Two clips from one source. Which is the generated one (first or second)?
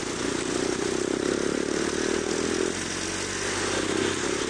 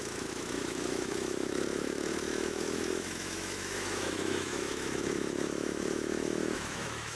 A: second